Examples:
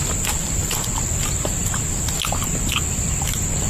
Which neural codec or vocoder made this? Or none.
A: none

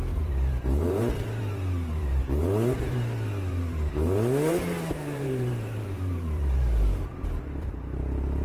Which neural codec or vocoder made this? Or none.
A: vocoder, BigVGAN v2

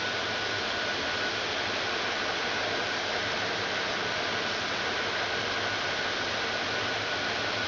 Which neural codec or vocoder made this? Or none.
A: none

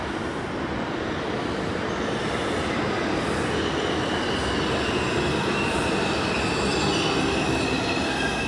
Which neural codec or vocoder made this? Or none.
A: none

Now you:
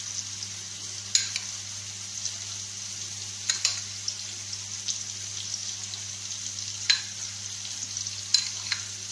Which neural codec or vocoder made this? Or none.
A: none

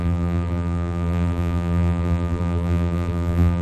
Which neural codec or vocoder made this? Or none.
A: vocoder, BigVGAN v2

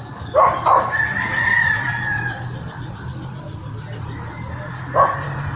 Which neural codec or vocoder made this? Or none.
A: vocoder, BigVGAN v2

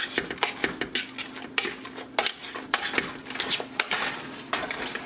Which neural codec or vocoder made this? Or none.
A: none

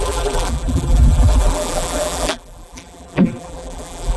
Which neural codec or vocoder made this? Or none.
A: vocoder, BigVGAN v2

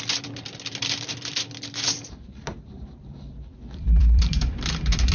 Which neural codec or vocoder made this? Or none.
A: vocoder, BigVGAN v2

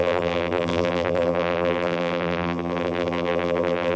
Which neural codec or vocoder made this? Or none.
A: vocoder, BigVGAN v2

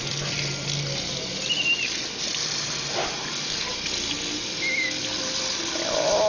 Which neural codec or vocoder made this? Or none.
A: vocoder, BigVGAN v2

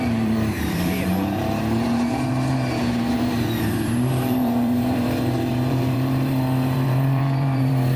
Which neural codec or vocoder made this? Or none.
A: vocoder, BigVGAN v2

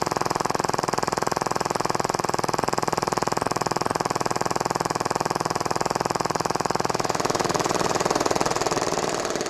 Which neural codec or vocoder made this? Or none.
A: vocoder, BigVGAN v2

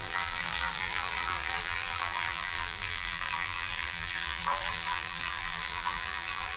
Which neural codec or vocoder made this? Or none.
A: vocoder, BigVGAN v2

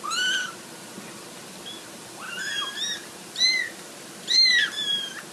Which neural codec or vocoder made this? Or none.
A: none